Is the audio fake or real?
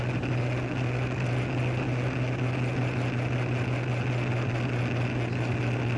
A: real